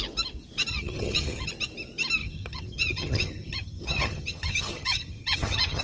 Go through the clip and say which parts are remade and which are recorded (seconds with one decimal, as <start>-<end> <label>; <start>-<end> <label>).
0.0-0.7 recorded; 0.7-1.5 remade; 1.5-2.2 recorded; 2.2-5.8 remade